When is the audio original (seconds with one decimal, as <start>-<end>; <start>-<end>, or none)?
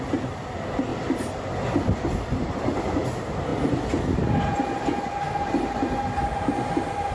0.0-7.1